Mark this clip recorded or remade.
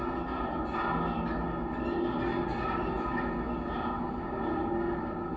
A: recorded